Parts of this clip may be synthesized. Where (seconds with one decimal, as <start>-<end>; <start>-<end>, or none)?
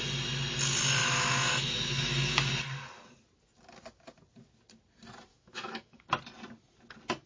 1.0-2.5; 5.3-6.1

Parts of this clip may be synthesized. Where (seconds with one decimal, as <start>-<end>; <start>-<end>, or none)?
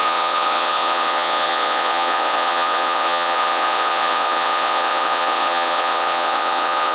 0.0-6.9